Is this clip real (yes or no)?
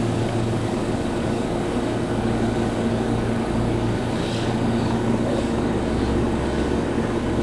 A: no